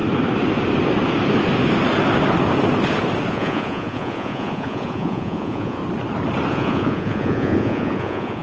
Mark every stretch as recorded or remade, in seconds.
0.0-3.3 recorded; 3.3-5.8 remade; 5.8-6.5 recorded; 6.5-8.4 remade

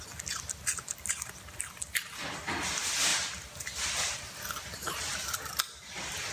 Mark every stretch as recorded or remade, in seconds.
0.0-6.3 recorded

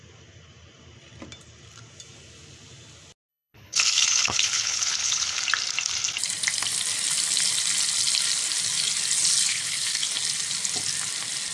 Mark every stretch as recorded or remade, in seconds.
0.0-3.3 recorded; 3.3-5.4 remade; 5.4-9.5 recorded; 9.5-10.1 remade; 10.1-11.5 recorded

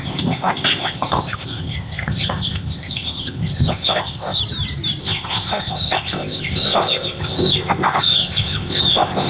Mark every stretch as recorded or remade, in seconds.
0.0-4.4 remade; 4.4-5.0 recorded; 5.0-9.3 remade

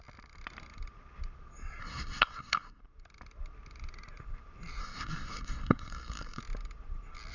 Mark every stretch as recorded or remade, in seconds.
0.0-1.8 recorded; 1.8-2.8 remade; 2.8-4.8 recorded; 4.8-6.4 remade; 6.4-7.3 recorded

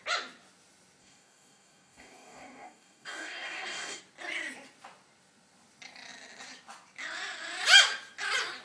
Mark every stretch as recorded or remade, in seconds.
0.0-1.0 recorded; 1.0-4.0 remade; 4.0-8.6 recorded